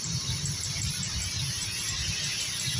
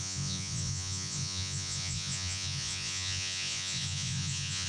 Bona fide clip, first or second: first